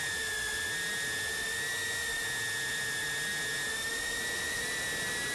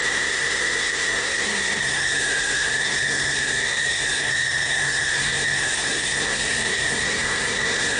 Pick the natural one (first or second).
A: first